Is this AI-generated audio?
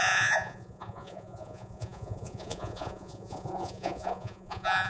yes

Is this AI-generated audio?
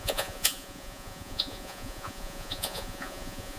yes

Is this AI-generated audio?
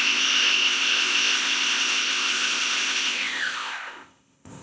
yes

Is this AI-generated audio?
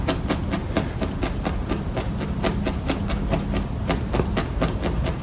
no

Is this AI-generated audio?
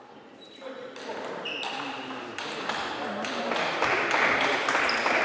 no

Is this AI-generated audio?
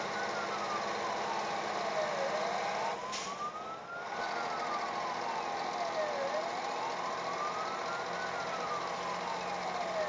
no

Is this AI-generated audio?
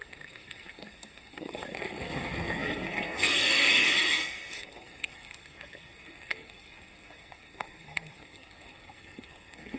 yes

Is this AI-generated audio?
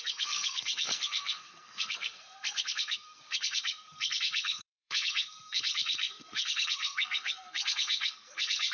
yes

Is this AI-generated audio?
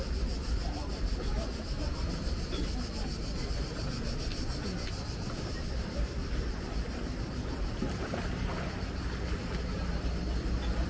yes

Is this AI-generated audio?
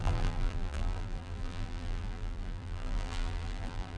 yes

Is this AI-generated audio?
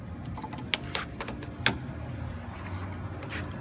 no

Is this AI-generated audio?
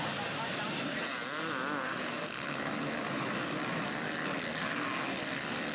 no